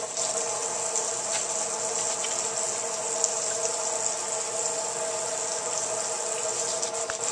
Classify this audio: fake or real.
real